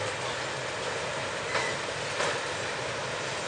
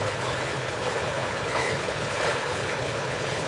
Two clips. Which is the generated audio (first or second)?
second